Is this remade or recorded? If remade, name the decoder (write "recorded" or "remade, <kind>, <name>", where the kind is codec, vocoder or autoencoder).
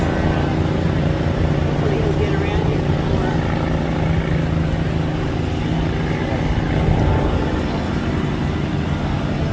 recorded